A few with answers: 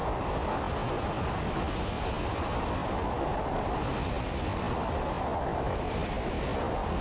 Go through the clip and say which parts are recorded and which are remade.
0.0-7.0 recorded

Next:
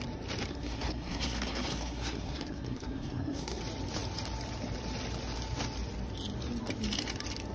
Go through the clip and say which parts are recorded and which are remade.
0.0-0.5 recorded; 0.5-3.6 remade; 3.6-7.5 recorded